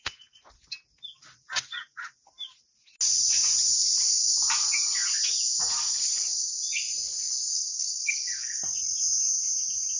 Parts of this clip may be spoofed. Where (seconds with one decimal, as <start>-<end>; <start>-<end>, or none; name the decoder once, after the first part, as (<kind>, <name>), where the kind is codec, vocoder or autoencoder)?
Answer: 7.5-8.6 (codec, SNAC)

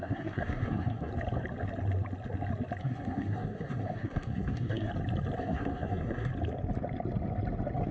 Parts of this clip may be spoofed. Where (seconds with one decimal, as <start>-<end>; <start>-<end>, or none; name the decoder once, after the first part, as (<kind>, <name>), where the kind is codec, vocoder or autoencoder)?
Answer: 0.0-1.1 (codec, SNAC); 2.8-4.9; 5.4-6.3

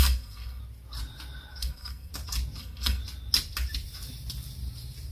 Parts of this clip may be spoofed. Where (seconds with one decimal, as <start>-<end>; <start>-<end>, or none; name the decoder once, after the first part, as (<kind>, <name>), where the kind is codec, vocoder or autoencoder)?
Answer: 0.0-0.6 (codec, SNAC); 1.6-2.1; 2.6-3.0

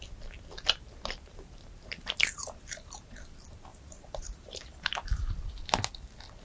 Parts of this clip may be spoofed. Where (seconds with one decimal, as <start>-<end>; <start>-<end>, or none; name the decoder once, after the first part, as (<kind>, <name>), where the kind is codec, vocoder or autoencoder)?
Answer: 1.3-3.2 (vocoder, BigVGAN v2); 3.7-5.6